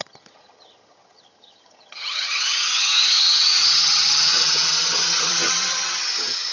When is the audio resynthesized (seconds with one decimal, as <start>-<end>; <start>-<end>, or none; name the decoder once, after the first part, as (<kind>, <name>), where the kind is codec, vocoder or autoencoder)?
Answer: 0.0-6.5 (vocoder, HiFi-GAN)